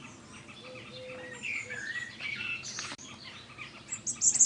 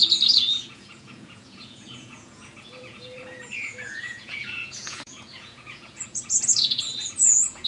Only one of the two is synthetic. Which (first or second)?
second